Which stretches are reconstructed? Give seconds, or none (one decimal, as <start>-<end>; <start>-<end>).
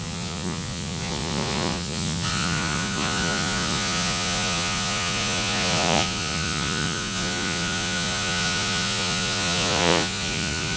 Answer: 0.0-10.8